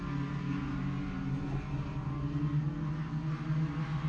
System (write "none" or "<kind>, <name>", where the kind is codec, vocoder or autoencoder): none